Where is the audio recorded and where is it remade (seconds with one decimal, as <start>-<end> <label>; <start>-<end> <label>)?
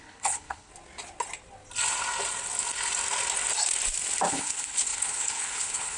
0.0-0.7 remade; 0.7-4.3 recorded; 4.3-6.0 remade